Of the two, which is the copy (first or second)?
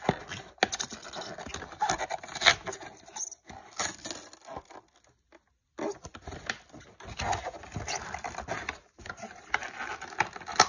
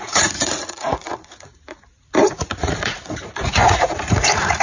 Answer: second